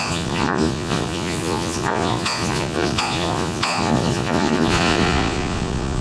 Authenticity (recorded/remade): remade